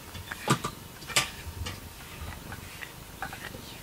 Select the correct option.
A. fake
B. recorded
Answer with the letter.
B